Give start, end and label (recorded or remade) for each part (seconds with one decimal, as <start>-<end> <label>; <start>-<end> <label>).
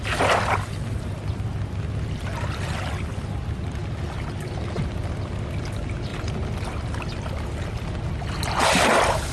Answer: 0.0-9.3 recorded